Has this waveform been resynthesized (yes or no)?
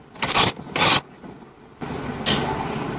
no